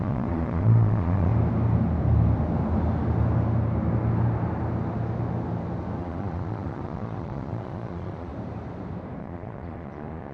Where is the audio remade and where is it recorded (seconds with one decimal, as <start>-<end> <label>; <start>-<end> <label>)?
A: 0.0-1.3 remade; 1.3-6.0 recorded; 6.0-8.3 remade; 8.3-9.2 recorded; 9.2-10.3 remade